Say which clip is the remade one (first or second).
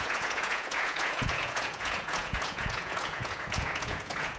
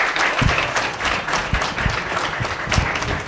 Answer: first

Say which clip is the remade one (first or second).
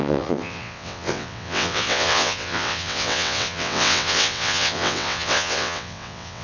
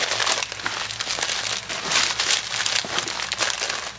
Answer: first